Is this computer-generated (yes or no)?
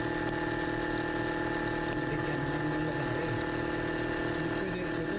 no